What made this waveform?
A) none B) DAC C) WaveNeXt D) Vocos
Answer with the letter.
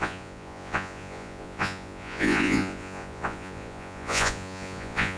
D